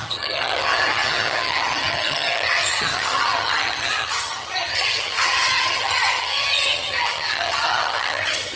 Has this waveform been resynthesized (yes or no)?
yes